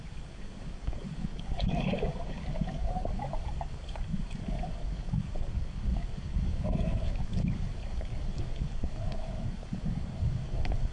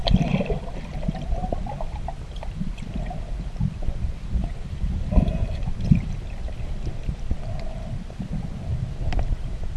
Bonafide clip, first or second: second